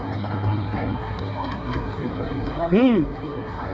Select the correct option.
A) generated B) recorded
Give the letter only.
A